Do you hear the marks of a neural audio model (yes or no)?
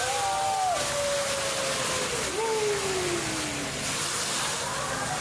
no